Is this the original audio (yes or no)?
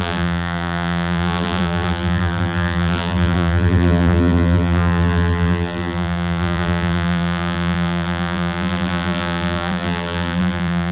no